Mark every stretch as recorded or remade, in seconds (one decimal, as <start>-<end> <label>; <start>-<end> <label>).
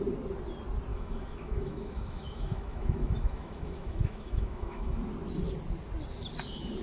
0.0-0.9 recorded; 0.9-5.0 remade; 5.0-6.8 recorded